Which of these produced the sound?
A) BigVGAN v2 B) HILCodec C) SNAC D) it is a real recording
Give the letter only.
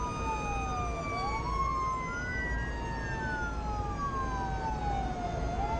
D